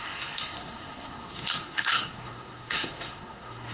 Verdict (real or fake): fake